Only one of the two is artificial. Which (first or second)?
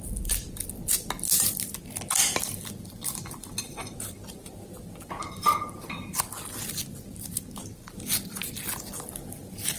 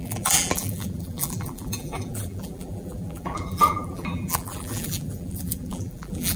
second